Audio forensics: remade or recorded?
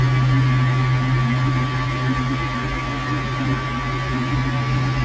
recorded